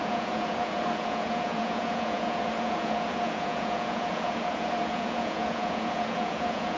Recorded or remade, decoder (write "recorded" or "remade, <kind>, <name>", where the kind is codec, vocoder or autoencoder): remade, vocoder, Vocos